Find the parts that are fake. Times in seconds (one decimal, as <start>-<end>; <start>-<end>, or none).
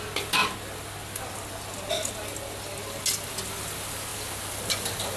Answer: none